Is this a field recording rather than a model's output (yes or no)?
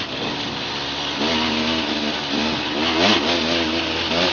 yes